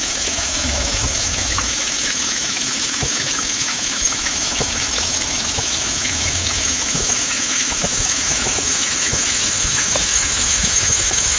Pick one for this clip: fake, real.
fake